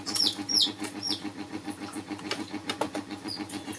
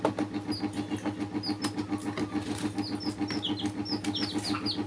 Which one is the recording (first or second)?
second